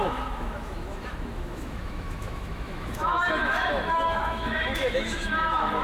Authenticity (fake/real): fake